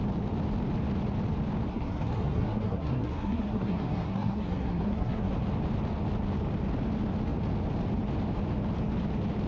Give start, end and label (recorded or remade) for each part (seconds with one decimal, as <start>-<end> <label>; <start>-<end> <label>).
0.0-1.7 recorded; 1.7-5.3 remade; 5.3-9.5 recorded